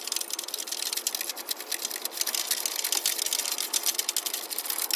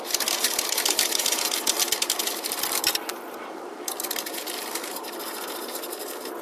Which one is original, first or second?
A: first